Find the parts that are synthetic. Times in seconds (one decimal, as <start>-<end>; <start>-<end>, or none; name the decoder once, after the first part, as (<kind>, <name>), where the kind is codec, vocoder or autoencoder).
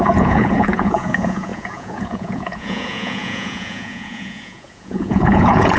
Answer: 0.0-5.8 (vocoder, Vocos)